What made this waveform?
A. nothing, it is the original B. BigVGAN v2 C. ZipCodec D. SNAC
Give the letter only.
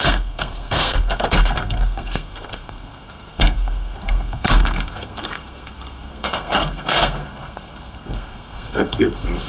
D